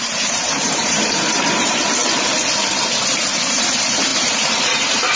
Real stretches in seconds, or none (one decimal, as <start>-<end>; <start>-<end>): 2.0-2.8